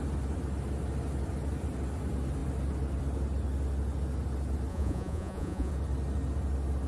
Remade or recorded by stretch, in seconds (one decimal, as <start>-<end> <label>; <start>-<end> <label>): 0.0-4.7 recorded; 4.7-5.7 remade; 5.7-6.9 recorded